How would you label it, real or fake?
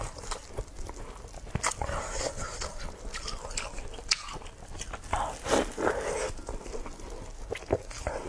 real